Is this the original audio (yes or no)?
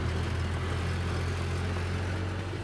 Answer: yes